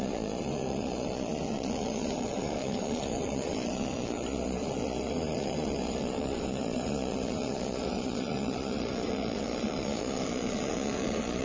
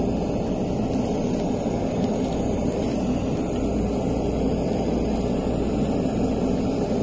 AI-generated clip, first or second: first